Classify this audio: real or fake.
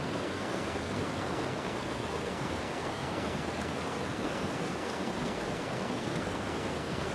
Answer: fake